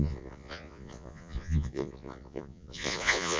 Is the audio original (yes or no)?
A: no